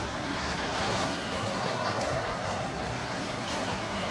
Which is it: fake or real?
fake